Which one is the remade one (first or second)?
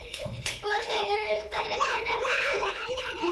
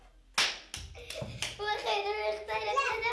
first